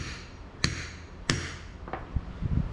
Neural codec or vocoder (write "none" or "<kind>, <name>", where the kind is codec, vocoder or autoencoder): vocoder, BigVGAN v2